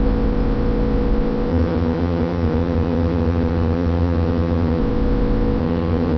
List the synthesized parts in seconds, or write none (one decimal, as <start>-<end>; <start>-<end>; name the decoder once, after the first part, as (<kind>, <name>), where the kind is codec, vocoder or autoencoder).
1.5-4.8 (vocoder, HiFi-GAN); 5.6-6.2